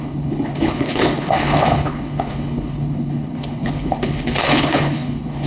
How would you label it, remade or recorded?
remade